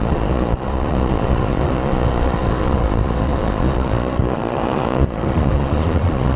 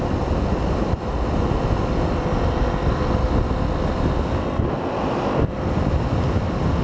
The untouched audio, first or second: second